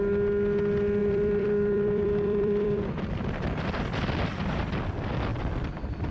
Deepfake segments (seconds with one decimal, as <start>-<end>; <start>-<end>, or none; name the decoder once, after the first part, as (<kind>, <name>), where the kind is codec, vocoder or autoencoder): 1.0-4.7 (vocoder, BigVGAN v2); 5.3-6.1